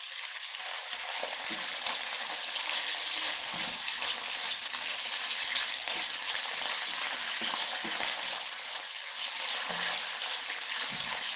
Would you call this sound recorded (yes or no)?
yes